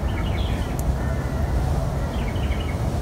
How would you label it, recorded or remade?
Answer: recorded